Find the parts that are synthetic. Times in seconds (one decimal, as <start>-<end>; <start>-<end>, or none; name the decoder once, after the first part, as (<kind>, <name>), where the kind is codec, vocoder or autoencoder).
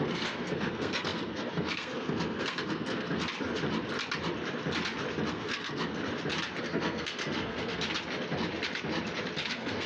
0.0-3.3 (codec, SNAC); 5.3-6.0; 6.6-7.8; 9.5-9.9